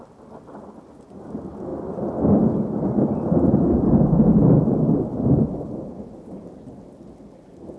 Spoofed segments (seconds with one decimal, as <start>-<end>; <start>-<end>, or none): none